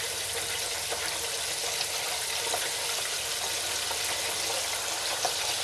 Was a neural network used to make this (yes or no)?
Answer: no